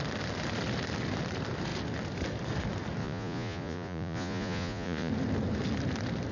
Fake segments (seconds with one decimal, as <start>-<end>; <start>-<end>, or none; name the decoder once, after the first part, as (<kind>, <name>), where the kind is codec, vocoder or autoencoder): 3.0-5.1 (vocoder, Vocos)